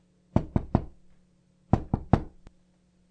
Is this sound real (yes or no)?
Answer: yes